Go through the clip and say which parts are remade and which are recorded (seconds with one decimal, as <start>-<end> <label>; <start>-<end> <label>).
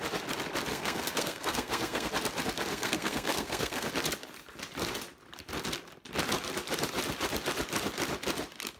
0.0-0.7 recorded; 0.7-2.1 remade; 2.1-2.7 recorded; 2.7-3.9 remade; 3.9-8.8 recorded